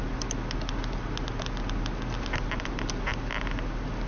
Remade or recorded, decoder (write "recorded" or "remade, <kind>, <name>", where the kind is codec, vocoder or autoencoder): recorded